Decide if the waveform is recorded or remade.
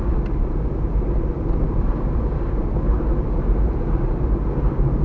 remade